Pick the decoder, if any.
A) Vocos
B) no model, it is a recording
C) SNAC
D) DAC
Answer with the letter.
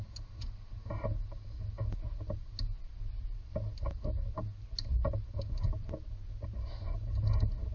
B